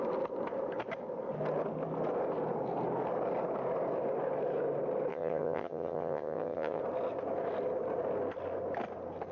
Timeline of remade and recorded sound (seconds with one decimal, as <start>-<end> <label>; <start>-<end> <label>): 0.0-5.1 recorded; 5.1-6.8 remade; 6.8-9.3 recorded